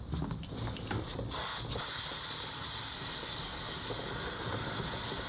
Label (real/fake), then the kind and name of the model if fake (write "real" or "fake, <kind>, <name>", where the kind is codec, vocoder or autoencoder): real